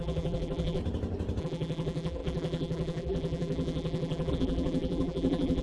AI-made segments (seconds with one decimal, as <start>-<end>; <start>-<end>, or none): 0.0-0.8; 1.4-5.6